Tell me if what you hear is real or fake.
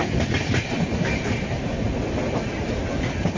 real